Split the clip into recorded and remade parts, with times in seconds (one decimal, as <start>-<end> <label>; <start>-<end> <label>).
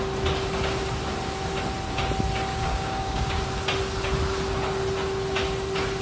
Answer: 0.0-2.5 recorded; 2.5-3.4 remade; 3.4-6.0 recorded